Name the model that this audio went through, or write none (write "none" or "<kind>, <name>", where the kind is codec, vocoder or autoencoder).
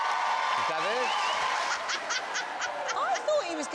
none